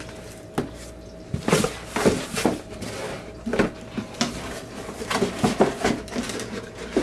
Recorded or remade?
recorded